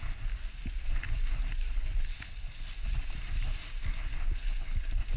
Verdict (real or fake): real